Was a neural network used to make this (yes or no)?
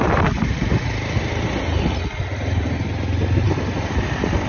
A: no